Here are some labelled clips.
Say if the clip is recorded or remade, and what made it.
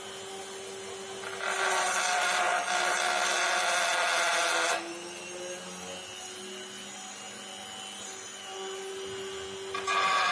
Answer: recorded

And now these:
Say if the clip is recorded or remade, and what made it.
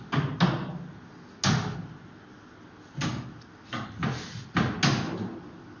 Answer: recorded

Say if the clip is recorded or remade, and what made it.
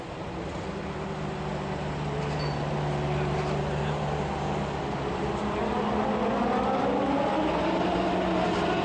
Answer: recorded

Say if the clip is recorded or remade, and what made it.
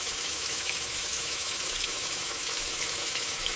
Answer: remade, autoencoder, DAC-VAE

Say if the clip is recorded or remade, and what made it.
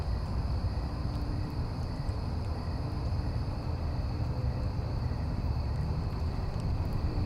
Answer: remade, vocoder, BigVGAN v2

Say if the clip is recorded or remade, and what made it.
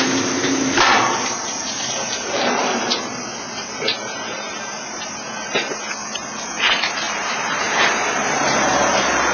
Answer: remade, vocoder, BigVGAN v2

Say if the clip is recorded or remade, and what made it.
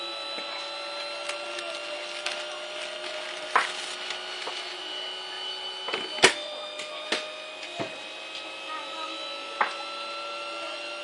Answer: recorded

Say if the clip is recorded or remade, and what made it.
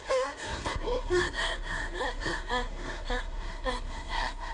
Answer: remade, codec, SNAC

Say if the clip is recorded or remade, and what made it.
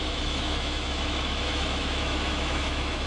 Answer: remade, autoencoder, DAC-VAE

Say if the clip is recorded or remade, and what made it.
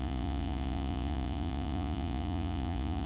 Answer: remade, vocoder, Vocos